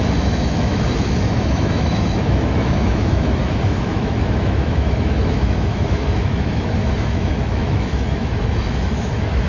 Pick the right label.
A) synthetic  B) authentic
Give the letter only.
A